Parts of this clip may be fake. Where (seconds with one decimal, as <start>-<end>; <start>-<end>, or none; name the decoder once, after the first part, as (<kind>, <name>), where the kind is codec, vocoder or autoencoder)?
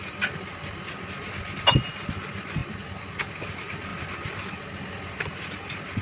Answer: none